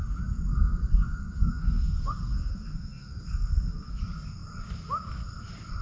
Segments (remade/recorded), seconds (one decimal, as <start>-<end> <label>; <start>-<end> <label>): 0.0-0.5 recorded; 0.5-4.0 remade; 4.0-5.8 recorded